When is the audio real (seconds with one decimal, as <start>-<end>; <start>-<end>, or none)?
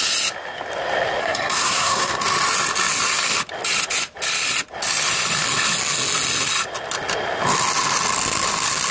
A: 0.0-1.2; 2.2-8.9